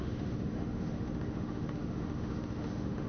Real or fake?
fake